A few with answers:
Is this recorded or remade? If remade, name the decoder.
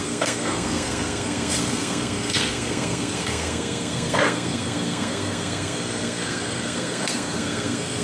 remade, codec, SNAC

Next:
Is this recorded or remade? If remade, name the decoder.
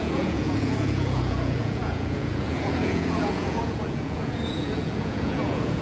remade, vocoder, Vocos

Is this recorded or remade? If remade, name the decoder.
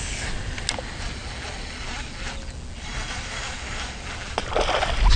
recorded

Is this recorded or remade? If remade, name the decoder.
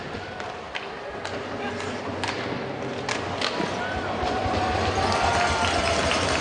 recorded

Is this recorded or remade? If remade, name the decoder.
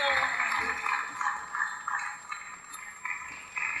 recorded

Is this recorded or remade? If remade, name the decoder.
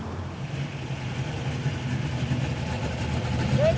recorded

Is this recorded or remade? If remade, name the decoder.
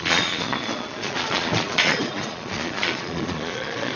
remade, vocoder, Vocos